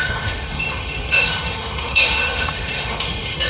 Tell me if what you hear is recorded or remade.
remade